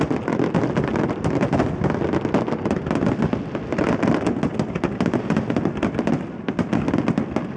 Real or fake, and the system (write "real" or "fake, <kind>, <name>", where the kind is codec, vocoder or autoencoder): real